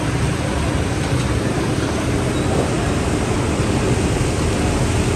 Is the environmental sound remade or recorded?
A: recorded